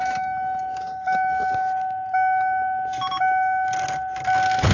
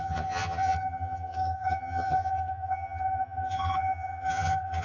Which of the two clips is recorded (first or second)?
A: first